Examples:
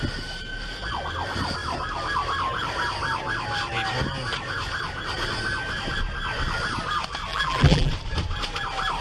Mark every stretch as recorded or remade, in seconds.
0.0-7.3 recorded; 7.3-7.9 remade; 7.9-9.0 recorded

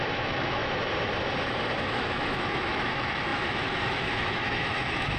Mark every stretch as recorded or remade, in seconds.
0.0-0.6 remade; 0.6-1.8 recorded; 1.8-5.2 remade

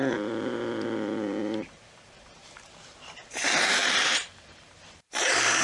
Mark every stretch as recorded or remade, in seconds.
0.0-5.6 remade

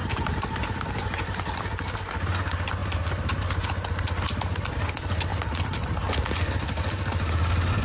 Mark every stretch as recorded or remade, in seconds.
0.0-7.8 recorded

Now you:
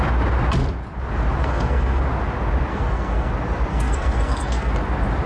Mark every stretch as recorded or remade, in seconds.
0.0-1.4 recorded; 1.4-2.0 remade; 2.0-2.7 recorded; 2.7-3.3 remade; 3.3-3.7 recorded; 3.7-4.7 remade; 4.7-5.3 recorded